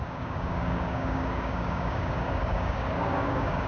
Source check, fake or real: fake